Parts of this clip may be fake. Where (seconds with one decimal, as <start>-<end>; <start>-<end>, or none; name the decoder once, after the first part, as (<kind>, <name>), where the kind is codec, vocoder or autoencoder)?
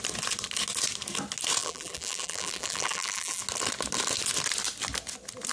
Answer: 1.6-3.4 (vocoder, BigVGAN v2)